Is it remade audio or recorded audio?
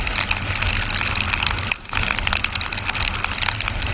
recorded